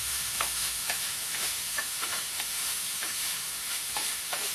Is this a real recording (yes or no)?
no